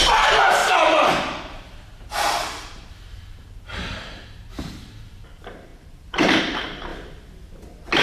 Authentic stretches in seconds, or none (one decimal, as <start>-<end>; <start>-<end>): 0.6-1.4; 6.9-8.0